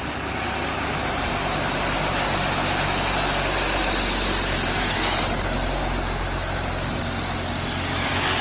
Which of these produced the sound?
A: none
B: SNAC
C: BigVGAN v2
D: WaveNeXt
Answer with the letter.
A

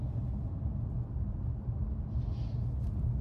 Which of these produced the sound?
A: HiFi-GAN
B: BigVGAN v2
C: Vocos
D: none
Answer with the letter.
D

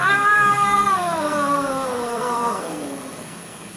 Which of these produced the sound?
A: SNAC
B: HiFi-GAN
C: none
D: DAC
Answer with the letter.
A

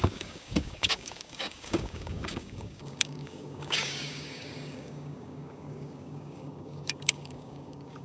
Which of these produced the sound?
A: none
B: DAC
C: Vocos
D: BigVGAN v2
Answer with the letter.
B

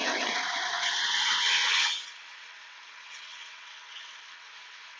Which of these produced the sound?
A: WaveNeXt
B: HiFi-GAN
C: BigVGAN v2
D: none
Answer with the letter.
A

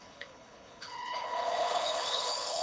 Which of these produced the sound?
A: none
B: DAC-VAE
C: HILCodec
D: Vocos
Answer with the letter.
C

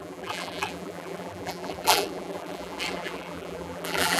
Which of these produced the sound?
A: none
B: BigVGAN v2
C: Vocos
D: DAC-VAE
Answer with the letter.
B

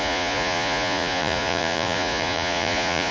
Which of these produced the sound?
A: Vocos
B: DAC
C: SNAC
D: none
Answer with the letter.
A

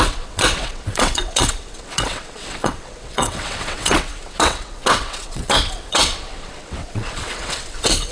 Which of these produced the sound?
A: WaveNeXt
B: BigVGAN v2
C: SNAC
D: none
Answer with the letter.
A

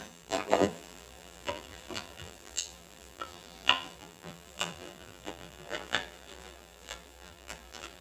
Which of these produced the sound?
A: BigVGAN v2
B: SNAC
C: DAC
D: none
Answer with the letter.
A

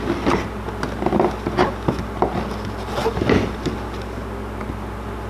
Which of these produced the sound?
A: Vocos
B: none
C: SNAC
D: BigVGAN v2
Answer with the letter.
B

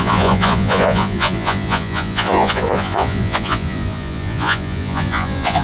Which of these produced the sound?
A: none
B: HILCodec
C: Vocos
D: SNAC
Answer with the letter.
C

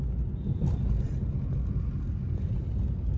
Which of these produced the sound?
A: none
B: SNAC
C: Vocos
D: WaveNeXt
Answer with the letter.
A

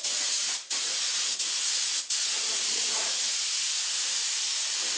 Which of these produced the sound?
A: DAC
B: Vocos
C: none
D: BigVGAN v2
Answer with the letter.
B